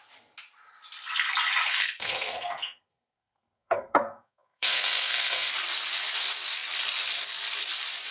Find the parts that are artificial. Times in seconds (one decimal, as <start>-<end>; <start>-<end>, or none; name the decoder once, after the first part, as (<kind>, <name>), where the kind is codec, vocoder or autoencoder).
1.7-5.5 (codec, SNAC)